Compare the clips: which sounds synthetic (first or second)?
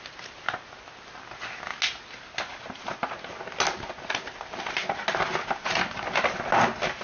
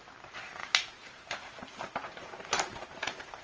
second